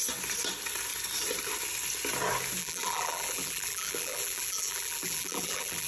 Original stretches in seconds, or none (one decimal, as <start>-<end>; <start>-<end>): 0.0-2.6